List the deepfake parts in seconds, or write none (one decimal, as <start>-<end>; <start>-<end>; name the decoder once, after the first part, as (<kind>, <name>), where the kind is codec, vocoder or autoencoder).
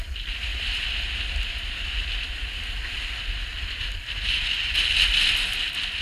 none